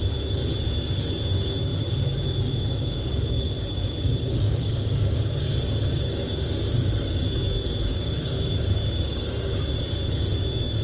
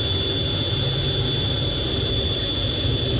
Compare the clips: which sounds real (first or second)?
second